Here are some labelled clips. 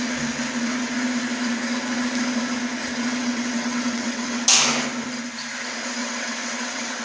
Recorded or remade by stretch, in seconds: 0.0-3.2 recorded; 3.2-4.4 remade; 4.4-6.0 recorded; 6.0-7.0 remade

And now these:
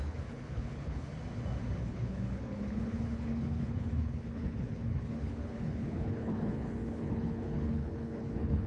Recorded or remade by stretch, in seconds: 0.0-1.1 remade; 1.1-1.8 recorded; 1.8-8.7 remade

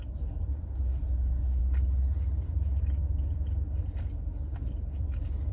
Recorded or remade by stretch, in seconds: 0.0-5.5 recorded

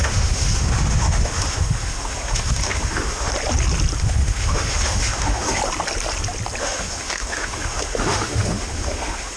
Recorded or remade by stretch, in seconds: 0.0-3.3 remade; 3.3-4.0 recorded; 4.0-5.6 remade; 5.6-6.6 recorded; 6.6-9.4 remade